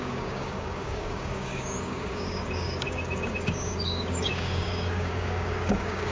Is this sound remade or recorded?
remade